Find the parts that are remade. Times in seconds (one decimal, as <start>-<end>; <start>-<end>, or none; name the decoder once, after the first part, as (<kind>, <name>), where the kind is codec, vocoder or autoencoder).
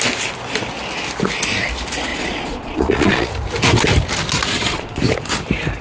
2.1-3.3 (vocoder, Vocos); 4.5-5.0